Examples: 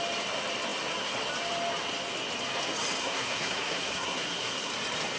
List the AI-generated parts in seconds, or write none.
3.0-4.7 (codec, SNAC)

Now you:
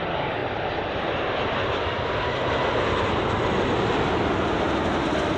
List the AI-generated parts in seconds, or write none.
none

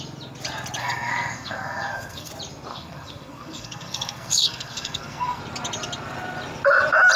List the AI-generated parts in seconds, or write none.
0.8-2.3 (codec, SNAC); 2.7-5.4

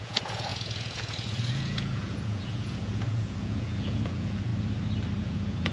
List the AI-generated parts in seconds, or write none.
0.0-4.5 (vocoder, Vocos); 5.2-5.7

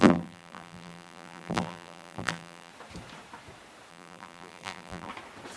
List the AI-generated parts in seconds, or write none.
0.0-2.7 (vocoder, BigVGAN v2); 3.9-5.1

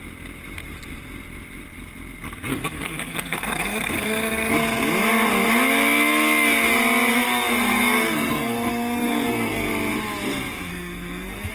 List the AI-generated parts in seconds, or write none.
2.5-4.5 (codec, SNAC); 7.1-9.7; 10.7-11.5

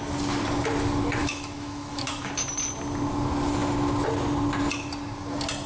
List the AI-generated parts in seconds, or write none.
1.2-2.3 (autoencoder, DAC-VAE)